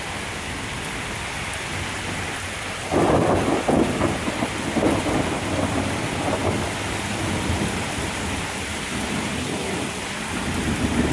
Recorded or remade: recorded